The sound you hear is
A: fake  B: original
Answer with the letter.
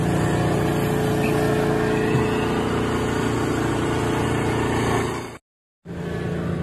B